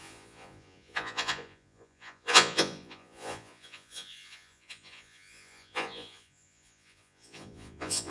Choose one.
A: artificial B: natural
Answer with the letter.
A